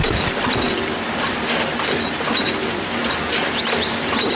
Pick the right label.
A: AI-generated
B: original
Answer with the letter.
B